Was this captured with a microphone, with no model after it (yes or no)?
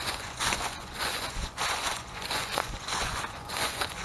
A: no